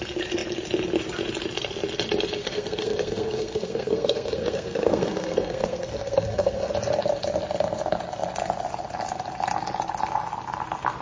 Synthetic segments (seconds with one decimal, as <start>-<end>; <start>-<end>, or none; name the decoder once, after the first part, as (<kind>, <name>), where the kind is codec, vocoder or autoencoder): 2.4-6.7 (codec, SNAC)